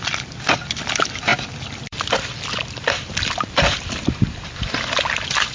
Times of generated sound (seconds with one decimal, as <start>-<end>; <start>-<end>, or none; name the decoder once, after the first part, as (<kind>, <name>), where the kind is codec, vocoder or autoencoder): 0.0-5.5 (vocoder, BigVGAN v2)